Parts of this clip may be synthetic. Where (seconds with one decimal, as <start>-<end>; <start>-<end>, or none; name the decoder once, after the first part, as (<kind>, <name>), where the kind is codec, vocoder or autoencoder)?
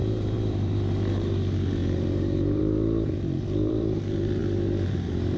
0.0-5.4 (vocoder, BigVGAN v2)